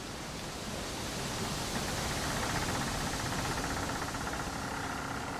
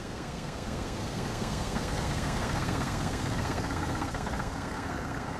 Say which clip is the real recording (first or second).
first